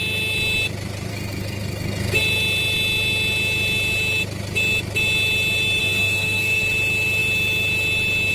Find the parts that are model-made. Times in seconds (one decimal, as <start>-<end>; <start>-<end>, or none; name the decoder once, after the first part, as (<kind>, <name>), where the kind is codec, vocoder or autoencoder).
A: 1.1-2.2 (codec, SNAC); 5.8-6.6